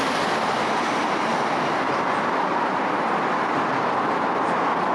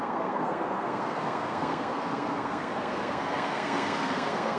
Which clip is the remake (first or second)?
second